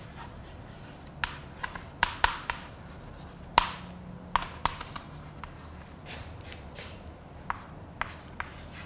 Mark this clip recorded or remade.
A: recorded